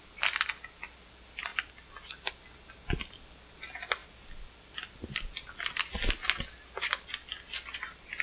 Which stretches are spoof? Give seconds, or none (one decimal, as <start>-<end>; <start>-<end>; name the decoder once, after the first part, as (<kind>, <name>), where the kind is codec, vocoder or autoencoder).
none